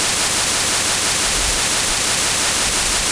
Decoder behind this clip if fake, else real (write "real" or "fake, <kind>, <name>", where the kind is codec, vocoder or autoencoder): real